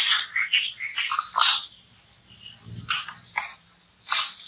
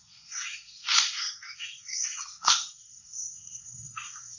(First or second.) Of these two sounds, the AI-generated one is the second